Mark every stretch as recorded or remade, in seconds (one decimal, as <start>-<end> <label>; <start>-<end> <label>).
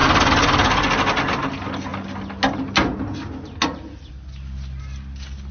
0.0-5.5 recorded